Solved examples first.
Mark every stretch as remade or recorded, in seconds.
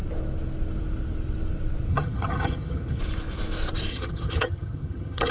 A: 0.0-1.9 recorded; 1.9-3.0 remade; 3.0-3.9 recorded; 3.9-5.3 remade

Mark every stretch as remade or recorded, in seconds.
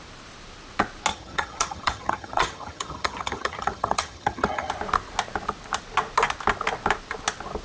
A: 0.0-1.1 recorded; 1.1-4.7 remade; 4.7-7.6 recorded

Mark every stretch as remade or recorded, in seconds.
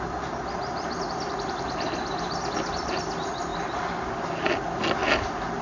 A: 0.0-5.6 recorded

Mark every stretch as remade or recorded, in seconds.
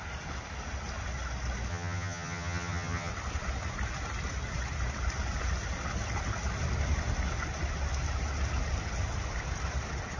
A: 0.0-1.7 recorded; 1.7-3.1 remade; 3.1-10.2 recorded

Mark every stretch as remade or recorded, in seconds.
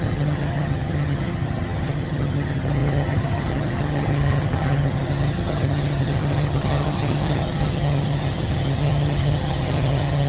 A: 0.0-10.3 remade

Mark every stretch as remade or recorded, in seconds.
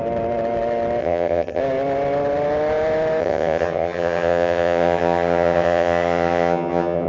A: 0.0-1.0 recorded; 1.0-1.6 remade; 1.6-3.2 recorded; 3.2-7.1 remade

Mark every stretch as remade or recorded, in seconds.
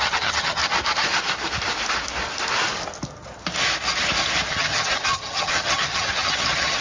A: 0.0-0.6 remade; 0.6-4.5 recorded; 4.5-6.8 remade